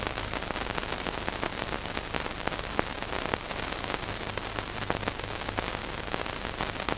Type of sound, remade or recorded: recorded